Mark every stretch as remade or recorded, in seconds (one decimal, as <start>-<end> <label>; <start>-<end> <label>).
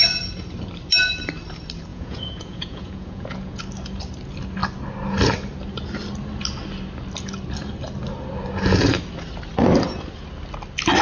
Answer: 0.0-1.9 recorded; 1.9-3.6 remade; 3.6-11.0 recorded